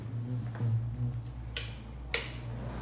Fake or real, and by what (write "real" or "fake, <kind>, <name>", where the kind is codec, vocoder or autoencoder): real